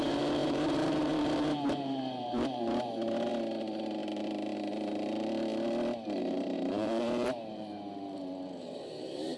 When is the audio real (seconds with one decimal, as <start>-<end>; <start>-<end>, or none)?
3.3-6.2